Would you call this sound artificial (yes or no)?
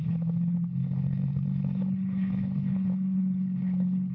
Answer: yes